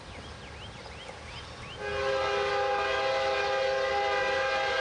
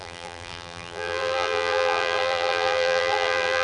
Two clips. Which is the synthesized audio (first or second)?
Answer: second